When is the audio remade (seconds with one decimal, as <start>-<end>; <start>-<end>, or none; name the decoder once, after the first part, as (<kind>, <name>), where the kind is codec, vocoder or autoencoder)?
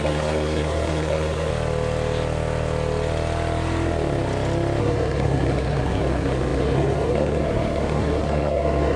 0.0-1.5 (codec, SNAC); 4.8-9.0